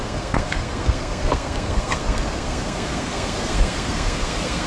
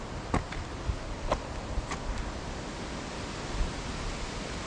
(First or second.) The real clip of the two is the second